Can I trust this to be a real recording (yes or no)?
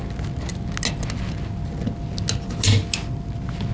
yes